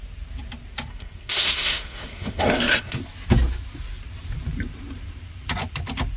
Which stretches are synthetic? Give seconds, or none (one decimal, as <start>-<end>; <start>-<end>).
0.9-3.0